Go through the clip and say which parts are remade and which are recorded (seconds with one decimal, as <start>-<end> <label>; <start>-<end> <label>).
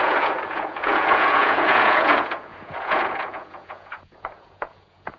0.0-5.2 remade